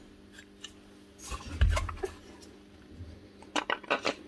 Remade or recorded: recorded